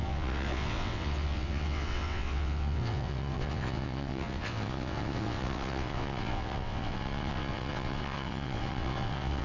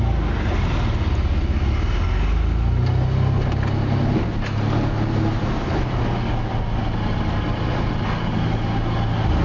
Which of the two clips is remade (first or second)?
first